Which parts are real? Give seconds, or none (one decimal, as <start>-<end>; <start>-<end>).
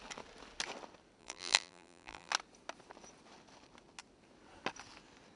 0.0-1.2; 2.3-5.4